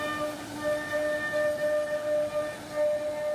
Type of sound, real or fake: real